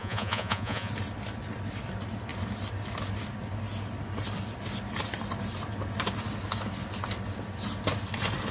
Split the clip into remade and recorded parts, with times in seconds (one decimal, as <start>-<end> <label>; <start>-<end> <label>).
0.0-0.9 remade; 0.9-8.5 recorded